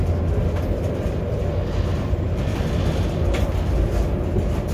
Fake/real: real